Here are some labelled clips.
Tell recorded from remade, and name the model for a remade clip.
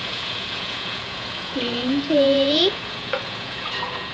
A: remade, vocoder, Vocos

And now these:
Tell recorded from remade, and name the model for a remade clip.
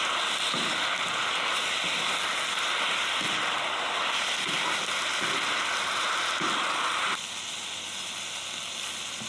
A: recorded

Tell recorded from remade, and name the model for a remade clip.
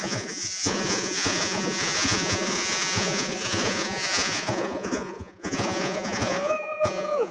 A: remade, vocoder, Vocos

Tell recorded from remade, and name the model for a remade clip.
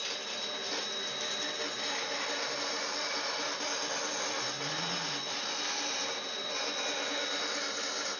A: recorded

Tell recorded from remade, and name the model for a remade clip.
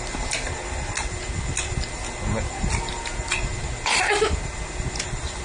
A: recorded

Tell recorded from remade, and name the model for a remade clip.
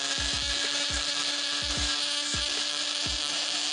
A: recorded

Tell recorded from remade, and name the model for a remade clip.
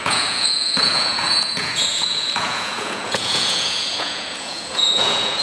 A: remade, vocoder, Vocos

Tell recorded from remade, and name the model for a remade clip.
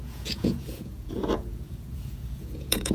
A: remade, vocoder, Vocos